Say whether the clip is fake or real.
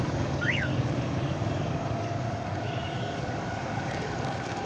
fake